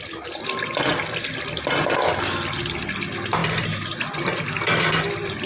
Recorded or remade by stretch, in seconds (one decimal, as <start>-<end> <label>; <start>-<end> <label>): 0.0-5.5 recorded